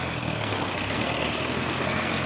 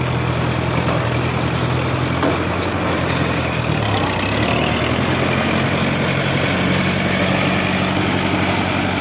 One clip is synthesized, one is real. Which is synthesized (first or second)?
first